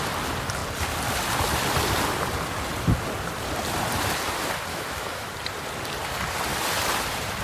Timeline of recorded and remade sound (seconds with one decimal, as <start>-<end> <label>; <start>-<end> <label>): 0.0-4.7 recorded; 4.7-5.3 remade; 5.3-7.4 recorded

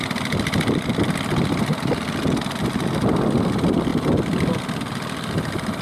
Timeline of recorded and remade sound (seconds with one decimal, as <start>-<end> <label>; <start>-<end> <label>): 0.0-5.8 recorded

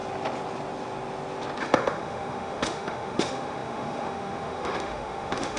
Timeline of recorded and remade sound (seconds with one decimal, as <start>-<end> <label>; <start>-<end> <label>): 0.0-1.6 recorded; 1.6-5.6 remade

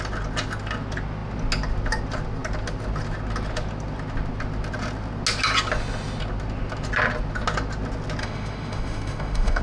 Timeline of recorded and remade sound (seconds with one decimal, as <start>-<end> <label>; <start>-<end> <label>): 0.0-8.2 recorded; 8.2-9.6 remade

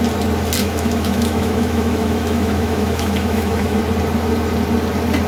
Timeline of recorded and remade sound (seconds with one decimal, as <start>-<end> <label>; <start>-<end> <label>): 0.0-0.6 recorded; 0.6-3.8 remade; 3.8-5.3 recorded